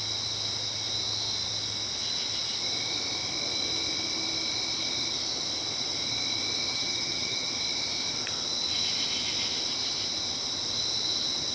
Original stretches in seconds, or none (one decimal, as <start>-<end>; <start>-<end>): 0.0-6.7; 7.5-11.5